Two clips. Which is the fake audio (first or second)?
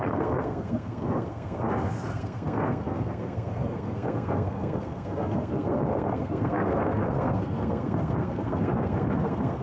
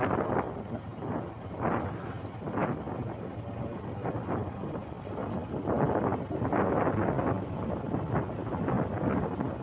first